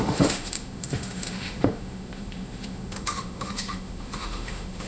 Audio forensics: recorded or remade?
remade